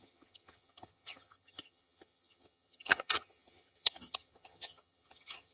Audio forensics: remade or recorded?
remade